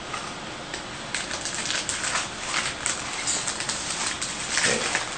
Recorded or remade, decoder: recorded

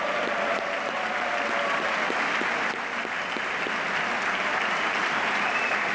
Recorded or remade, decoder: recorded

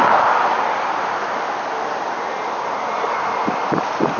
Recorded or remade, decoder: recorded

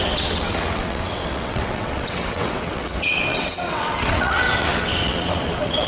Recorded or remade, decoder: remade, vocoder, WaveNeXt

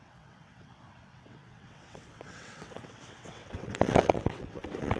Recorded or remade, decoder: remade, vocoder, WaveNeXt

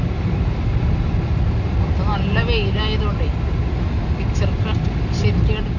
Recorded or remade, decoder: recorded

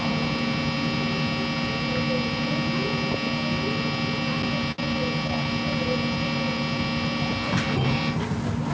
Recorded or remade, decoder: recorded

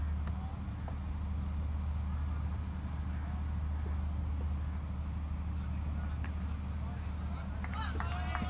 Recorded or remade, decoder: recorded